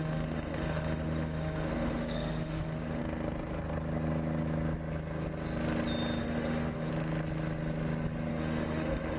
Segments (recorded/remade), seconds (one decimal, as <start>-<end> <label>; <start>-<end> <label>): 0.0-3.0 remade; 3.0-6.2 recorded; 6.2-6.9 remade; 6.9-8.3 recorded; 8.3-9.2 remade